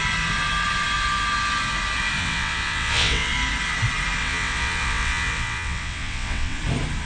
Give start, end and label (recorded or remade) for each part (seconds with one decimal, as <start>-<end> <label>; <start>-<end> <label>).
0.0-2.2 recorded; 2.2-3.3 remade; 3.3-4.2 recorded; 4.2-6.6 remade; 6.6-7.1 recorded